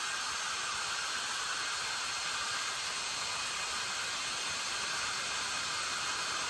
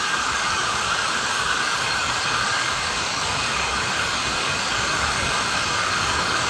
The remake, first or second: second